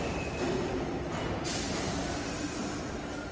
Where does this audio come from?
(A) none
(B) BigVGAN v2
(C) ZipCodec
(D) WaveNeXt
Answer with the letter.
A